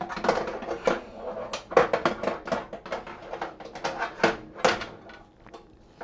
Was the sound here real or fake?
real